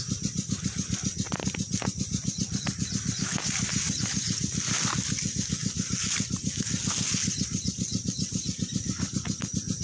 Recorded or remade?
recorded